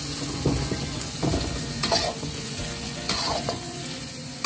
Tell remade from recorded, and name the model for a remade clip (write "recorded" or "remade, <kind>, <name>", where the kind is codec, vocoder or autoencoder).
remade, vocoder, Vocos